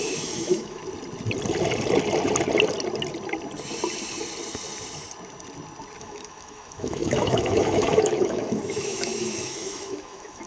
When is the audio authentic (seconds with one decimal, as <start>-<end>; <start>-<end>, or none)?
0.8-6.0